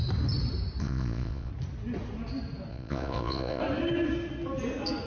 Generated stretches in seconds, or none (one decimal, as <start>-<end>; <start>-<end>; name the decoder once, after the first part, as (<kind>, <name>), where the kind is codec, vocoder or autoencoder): 0.8-1.5 (vocoder, Vocos); 2.7-3.6